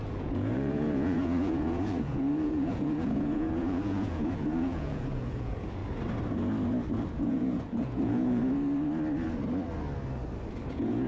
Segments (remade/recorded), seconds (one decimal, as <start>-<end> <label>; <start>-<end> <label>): 0.0-5.8 remade; 5.8-7.1 recorded; 7.1-8.4 remade; 8.4-10.7 recorded; 10.7-11.1 remade